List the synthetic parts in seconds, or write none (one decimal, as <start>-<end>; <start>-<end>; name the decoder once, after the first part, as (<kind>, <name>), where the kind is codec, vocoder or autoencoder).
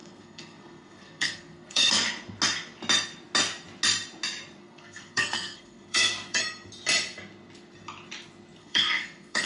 0.0-1.9 (codec, SNAC); 4.6-6.4; 8.6-9.5